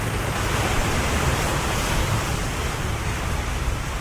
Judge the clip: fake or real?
real